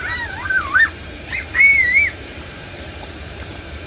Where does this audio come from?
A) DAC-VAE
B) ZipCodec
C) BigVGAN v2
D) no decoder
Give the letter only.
C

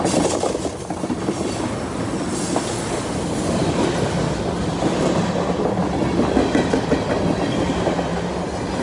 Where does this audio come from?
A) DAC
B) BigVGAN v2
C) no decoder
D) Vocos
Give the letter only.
C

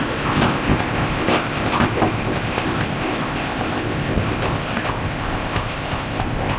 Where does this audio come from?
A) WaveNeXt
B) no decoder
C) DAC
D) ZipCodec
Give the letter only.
D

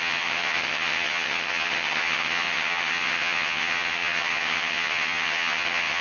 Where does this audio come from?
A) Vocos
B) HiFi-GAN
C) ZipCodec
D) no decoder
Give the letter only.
B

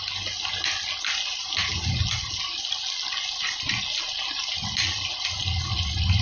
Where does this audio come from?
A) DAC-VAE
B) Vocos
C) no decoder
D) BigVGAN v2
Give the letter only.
C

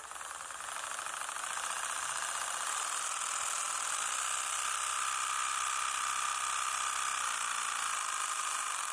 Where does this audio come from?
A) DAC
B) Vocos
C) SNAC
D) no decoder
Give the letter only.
D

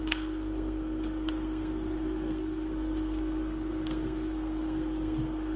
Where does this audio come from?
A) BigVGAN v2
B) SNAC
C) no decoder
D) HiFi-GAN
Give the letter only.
B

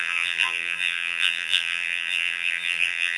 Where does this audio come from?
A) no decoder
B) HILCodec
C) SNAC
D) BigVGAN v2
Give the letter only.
D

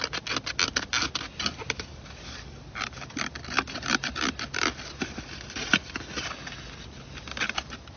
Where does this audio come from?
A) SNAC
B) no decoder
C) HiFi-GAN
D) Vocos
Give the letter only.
B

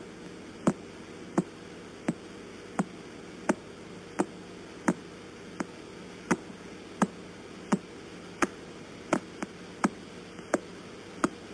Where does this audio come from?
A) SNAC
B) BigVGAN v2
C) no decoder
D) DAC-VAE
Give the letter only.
C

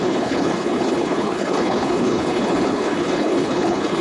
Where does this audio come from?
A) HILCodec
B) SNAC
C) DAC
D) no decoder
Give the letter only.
A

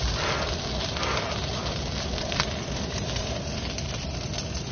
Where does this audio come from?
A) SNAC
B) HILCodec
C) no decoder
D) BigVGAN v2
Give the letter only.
D